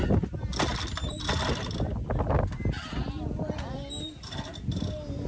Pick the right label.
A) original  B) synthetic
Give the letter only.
A